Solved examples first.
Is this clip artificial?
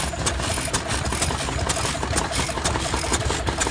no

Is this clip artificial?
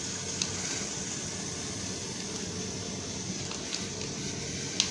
no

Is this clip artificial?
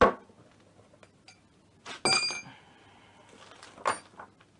no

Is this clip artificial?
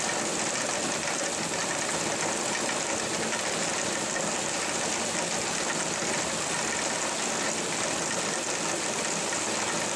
no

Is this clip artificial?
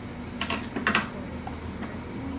no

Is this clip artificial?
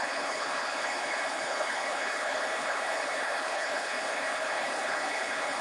yes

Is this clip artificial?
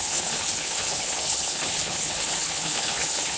yes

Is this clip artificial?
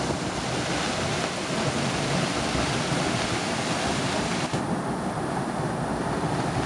no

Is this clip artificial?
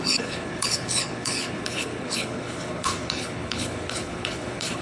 yes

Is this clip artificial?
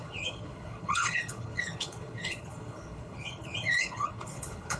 yes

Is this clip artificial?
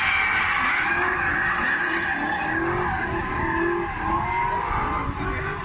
no